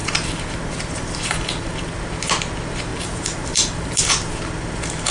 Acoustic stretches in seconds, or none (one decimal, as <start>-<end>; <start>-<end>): 1.9-2.9; 4.0-5.1